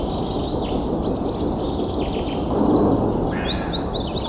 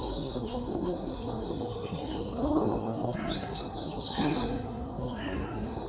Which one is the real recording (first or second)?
first